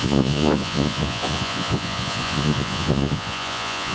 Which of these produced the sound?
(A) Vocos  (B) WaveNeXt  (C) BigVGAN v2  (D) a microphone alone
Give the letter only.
A